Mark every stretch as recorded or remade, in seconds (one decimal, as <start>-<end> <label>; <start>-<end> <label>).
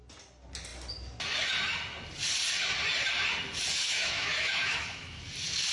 0.0-3.8 recorded; 3.8-5.2 remade; 5.2-5.7 recorded